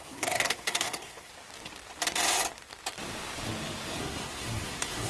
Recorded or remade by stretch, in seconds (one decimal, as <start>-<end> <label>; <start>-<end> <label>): 0.0-1.3 remade; 1.3-4.0 recorded; 4.0-5.1 remade